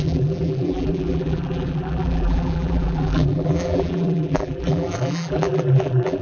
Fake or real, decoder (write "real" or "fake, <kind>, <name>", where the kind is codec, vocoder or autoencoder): fake, vocoder, BigVGAN v2